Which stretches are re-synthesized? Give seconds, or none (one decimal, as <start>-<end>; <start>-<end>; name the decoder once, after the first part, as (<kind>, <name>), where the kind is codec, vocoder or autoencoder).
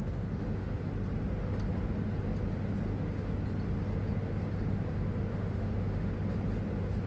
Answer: 0.0-0.8 (autoencoder, DAC-VAE); 5.3-6.1